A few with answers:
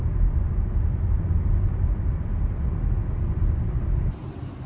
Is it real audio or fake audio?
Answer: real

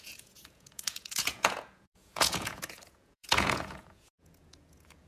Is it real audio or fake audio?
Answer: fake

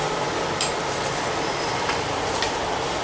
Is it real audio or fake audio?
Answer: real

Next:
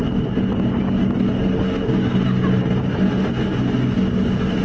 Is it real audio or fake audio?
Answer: real